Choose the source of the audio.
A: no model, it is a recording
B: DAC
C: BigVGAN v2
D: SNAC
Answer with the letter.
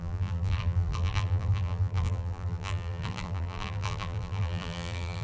C